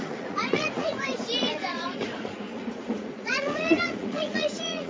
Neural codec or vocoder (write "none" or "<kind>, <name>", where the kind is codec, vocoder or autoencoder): vocoder, Vocos